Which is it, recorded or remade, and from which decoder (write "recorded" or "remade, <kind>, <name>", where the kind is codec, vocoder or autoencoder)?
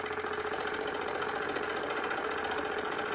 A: recorded